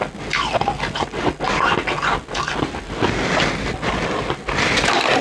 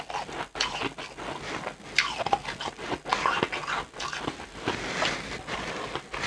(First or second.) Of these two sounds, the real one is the second